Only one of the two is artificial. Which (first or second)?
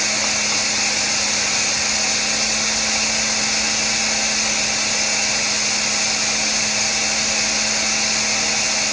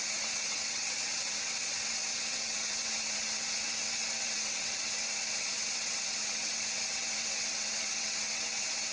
second